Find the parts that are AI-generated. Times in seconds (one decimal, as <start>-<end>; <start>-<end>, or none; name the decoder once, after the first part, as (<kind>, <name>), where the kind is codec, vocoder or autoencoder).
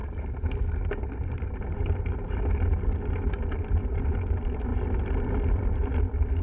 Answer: 3.8-4.7 (vocoder, BigVGAN v2); 5.5-6.4